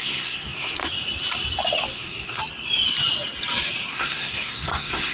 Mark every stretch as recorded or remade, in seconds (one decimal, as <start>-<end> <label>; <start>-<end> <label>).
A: 0.0-0.8 remade; 0.8-1.9 recorded; 1.9-2.4 remade; 2.4-3.9 recorded; 3.9-5.1 remade